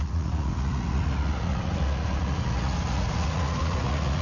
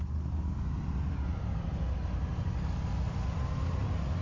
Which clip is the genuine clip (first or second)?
second